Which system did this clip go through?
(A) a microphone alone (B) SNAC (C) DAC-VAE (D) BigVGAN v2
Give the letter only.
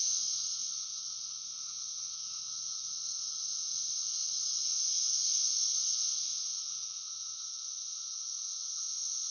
C